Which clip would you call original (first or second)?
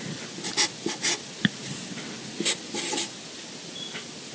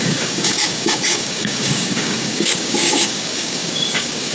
first